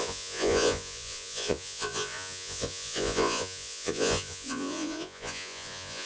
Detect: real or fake fake